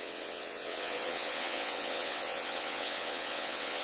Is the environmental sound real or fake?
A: fake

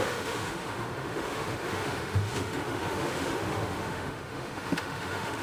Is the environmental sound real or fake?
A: fake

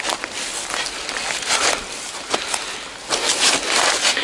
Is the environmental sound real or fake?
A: real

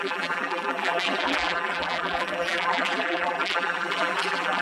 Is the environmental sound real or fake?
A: fake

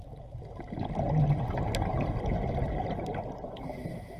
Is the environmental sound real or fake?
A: real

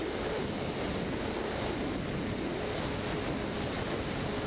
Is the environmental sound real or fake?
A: real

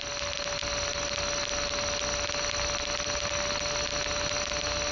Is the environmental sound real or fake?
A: real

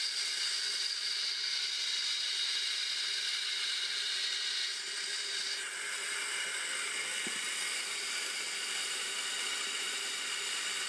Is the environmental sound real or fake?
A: real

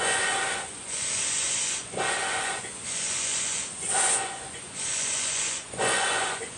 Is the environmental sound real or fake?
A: fake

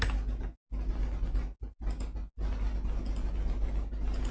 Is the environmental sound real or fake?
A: real